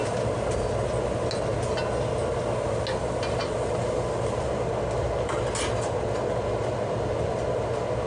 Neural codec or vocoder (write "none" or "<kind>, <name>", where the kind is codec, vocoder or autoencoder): none